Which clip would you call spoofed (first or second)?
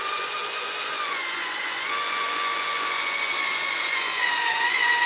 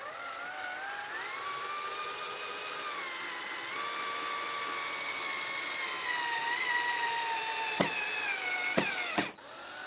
first